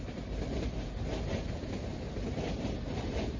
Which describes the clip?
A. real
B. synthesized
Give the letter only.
A